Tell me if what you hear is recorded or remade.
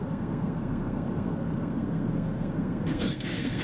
remade